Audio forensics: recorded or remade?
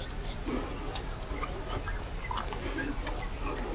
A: recorded